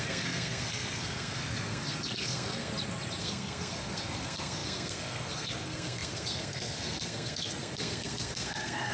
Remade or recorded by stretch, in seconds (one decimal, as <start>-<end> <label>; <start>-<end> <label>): 0.0-2.7 remade; 2.7-3.2 recorded; 3.2-8.9 remade